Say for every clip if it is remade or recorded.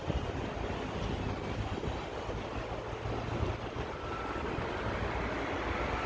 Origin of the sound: recorded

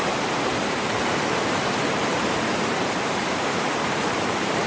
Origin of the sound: remade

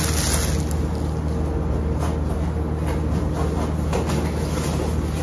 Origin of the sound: recorded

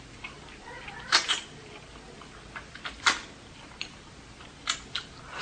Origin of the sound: recorded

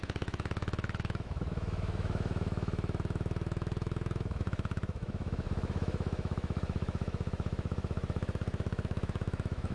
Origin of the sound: remade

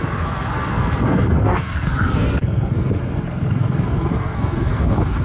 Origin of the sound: remade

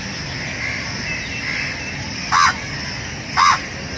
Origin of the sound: recorded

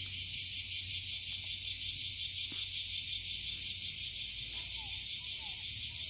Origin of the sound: recorded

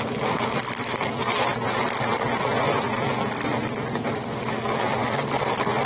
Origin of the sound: recorded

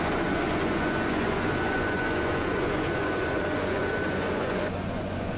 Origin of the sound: remade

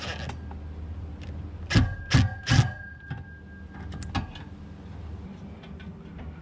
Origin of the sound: recorded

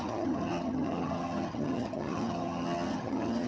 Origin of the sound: remade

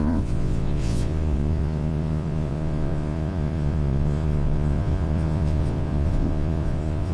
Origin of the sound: remade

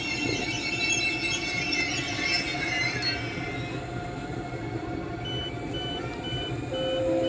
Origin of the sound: recorded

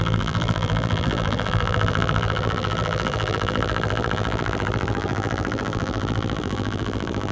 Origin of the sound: remade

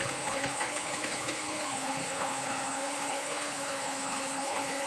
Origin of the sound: remade